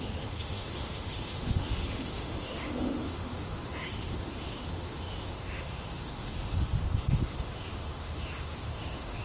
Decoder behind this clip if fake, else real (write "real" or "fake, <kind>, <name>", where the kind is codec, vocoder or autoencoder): fake, autoencoder, DAC-VAE